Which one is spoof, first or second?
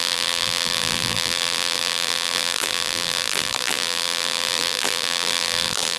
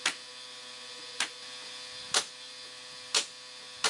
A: first